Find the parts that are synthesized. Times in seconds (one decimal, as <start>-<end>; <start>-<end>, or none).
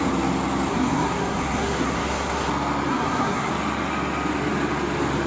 0.7-2.5; 2.9-3.5